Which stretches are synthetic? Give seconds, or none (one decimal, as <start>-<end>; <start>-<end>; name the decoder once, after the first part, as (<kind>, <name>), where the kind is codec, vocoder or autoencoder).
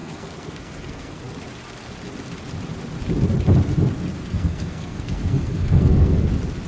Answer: 0.0-1.2 (codec, SNAC); 4.2-6.3